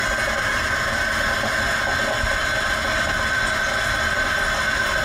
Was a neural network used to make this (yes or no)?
no